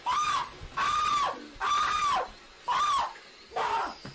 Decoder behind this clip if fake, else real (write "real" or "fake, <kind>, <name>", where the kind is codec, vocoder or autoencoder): real